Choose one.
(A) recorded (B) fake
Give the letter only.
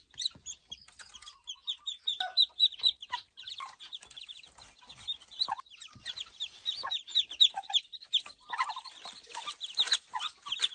A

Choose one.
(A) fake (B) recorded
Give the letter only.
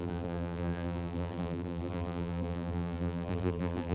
A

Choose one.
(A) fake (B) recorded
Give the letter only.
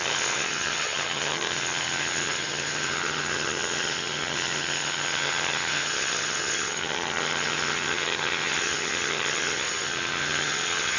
A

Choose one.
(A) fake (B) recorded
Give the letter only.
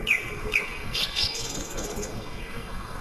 A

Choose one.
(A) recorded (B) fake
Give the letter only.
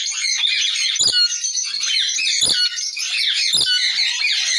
A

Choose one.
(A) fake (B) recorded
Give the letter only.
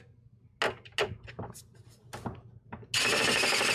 B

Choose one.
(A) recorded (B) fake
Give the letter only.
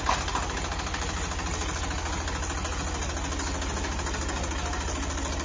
A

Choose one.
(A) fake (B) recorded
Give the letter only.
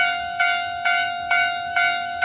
A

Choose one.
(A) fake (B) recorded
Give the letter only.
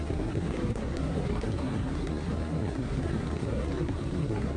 A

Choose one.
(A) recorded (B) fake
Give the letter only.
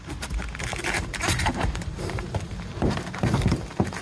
B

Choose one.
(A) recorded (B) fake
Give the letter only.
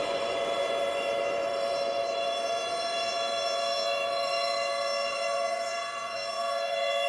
B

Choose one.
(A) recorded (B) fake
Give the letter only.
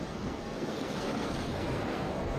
B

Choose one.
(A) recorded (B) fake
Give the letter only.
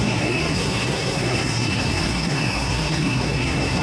B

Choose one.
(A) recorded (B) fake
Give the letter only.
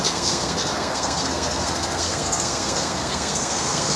B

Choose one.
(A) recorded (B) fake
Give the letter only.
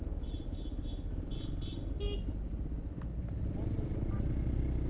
A